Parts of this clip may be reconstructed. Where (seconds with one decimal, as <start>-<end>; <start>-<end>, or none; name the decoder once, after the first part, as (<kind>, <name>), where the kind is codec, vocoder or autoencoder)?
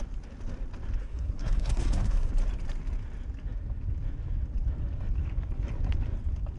1.0-2.3 (codec, SNAC)